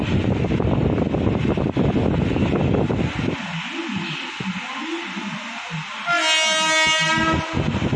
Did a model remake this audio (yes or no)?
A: no